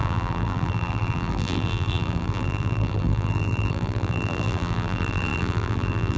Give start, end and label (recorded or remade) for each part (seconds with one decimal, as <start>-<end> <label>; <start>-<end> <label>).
0.0-6.2 remade